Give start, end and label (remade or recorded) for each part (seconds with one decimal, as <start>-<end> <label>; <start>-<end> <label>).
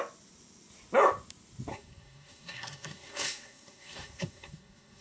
0.0-1.7 recorded; 1.7-5.0 remade